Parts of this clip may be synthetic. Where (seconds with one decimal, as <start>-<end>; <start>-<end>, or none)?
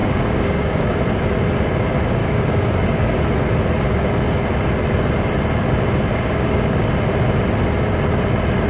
0.0-1.0; 2.2-3.2; 6.1-6.8